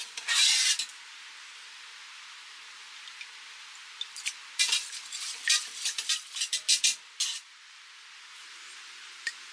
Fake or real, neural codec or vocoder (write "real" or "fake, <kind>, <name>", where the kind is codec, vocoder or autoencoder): real